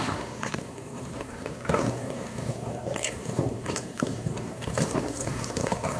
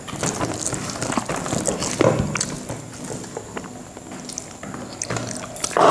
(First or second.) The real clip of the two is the second